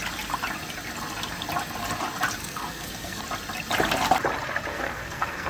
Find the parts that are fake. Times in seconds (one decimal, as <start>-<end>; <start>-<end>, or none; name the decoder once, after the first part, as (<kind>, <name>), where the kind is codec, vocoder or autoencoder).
2.4-3.2 (codec, SNAC); 4.7-5.5